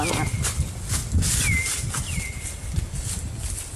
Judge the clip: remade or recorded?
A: recorded